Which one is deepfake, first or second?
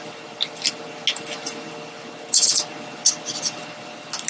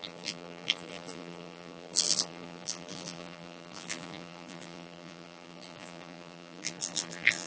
second